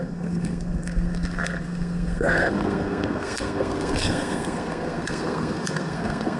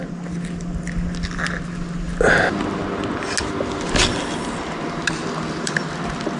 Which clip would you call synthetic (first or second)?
first